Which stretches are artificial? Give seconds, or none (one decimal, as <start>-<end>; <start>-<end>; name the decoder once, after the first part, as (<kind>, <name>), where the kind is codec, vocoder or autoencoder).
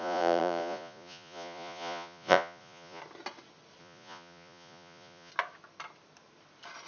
0.0-3.0 (vocoder, Vocos); 3.8-5.3